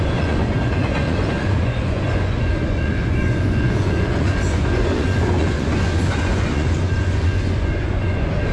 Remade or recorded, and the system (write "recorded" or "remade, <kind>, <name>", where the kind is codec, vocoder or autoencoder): remade, vocoder, Vocos